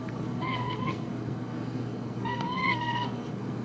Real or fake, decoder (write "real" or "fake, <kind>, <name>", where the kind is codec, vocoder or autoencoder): fake, codec, SNAC